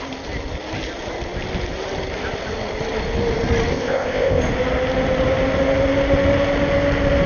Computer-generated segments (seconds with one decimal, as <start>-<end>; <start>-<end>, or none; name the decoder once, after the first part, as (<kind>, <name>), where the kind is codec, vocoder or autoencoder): 3.7-4.4 (codec, ZipCodec)